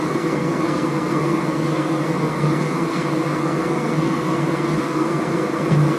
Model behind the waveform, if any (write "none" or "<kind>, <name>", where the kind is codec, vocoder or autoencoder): codec, SNAC